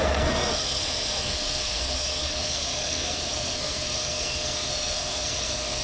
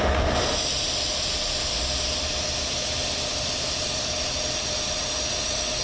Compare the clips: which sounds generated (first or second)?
first